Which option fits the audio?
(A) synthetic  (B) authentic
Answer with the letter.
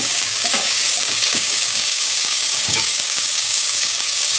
A